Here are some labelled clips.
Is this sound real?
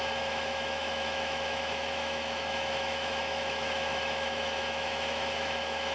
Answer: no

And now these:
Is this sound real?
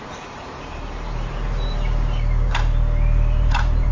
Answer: no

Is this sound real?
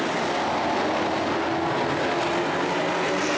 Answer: yes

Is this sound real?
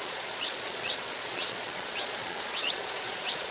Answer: no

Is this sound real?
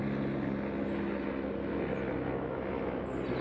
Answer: yes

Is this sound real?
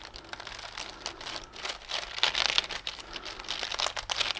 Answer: yes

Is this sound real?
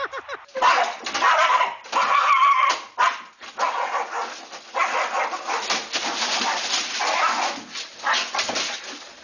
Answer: yes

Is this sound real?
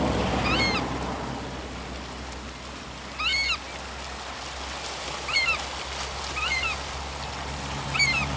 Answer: yes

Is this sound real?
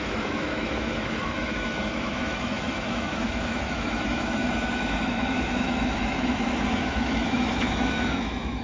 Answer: no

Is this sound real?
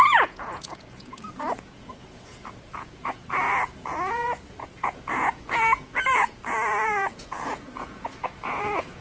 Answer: no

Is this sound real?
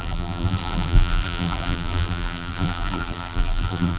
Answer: no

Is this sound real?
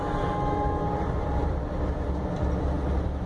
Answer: yes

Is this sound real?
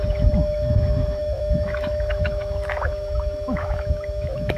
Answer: no